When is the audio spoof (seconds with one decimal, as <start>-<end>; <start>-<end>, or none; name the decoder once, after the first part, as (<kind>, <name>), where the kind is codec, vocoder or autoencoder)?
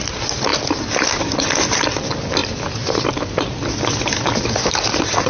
none